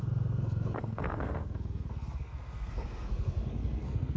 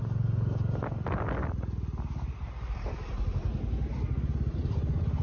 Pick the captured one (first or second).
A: second